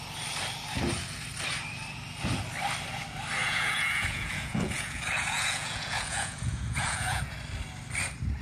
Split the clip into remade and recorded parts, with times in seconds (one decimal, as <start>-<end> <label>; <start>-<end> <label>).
0.0-3.4 recorded; 3.4-7.2 remade; 7.2-8.4 recorded